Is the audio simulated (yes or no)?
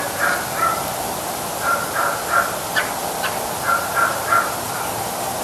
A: no